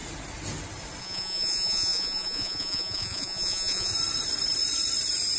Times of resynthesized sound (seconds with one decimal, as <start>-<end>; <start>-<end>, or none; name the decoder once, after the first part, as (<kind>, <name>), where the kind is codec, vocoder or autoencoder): 1.0-3.9 (vocoder, Vocos)